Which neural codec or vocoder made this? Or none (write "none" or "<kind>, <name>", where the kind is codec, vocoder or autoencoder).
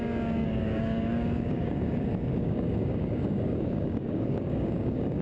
codec, DAC